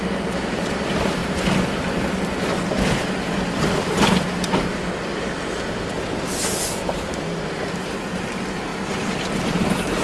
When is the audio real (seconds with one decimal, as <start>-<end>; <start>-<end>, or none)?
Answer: 1.2-2.0; 5.1-7.5; 8.7-9.3